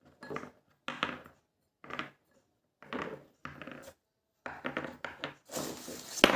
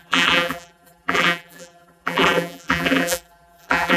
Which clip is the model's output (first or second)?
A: second